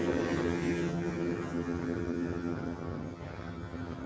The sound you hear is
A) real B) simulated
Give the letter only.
B